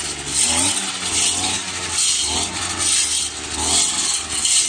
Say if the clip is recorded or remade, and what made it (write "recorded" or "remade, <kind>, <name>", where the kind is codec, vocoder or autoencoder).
recorded